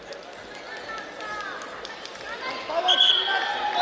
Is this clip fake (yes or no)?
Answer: no